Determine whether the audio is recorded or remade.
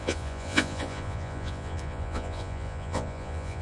remade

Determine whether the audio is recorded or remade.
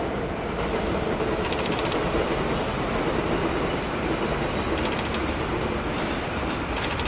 recorded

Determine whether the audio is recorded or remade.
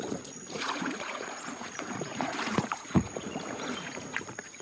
remade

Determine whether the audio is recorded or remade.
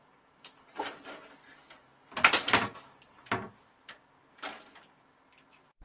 recorded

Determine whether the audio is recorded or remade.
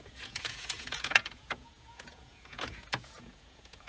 remade